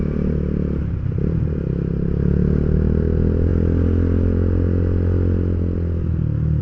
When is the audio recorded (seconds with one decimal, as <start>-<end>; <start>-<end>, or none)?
0.0-6.6